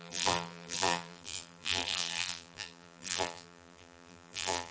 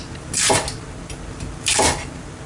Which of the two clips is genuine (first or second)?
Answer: second